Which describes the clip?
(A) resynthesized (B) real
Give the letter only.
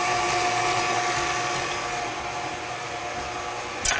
B